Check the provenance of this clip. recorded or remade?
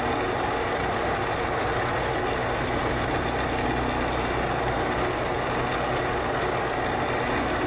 recorded